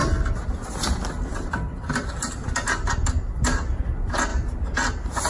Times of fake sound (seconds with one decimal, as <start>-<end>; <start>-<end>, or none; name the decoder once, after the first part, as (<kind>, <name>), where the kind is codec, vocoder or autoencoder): 4.3-4.8 (vocoder, BigVGAN v2)